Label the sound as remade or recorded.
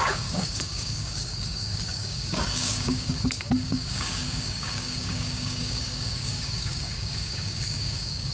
remade